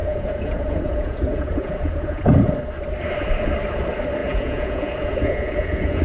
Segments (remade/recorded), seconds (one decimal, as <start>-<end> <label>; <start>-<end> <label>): 0.0-2.5 remade; 2.5-4.2 recorded; 4.2-6.0 remade